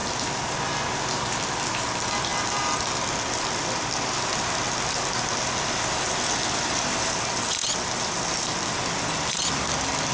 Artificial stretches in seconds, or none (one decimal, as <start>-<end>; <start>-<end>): none